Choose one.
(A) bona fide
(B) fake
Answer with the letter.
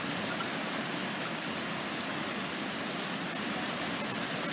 A